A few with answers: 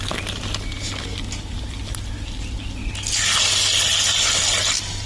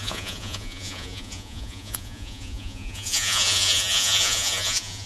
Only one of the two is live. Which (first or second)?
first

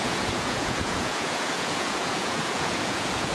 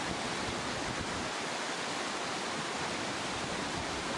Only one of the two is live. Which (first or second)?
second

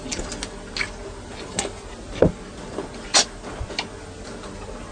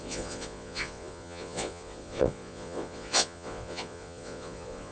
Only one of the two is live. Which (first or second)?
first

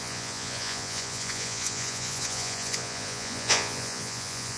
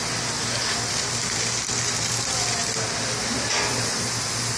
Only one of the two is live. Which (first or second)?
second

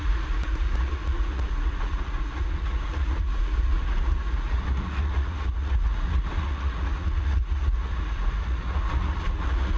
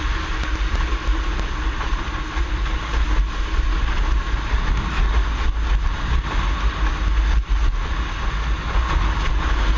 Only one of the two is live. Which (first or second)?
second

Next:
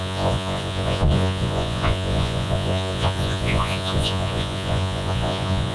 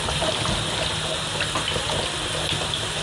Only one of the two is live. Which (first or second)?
second